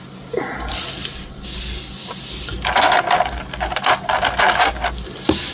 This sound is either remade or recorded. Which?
recorded